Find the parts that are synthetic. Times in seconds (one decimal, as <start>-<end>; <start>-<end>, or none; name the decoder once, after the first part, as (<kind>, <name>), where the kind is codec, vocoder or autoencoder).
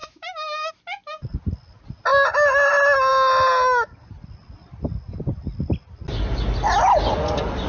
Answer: 0.0-0.7 (autoencoder, DAC-VAE)